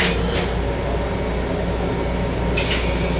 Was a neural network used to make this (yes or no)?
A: no